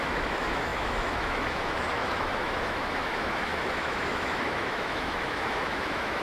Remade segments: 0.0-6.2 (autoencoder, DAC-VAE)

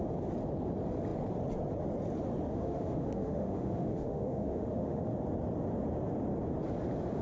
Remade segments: 2.5-5.1 (autoencoder, DAC-VAE)

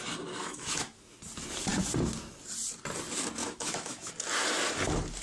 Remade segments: 0.4-1.2 (autoencoder, DAC-VAE); 3.4-4.1

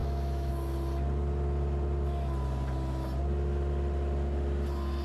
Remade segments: 0.0-0.5 (autoencoder, DAC-VAE)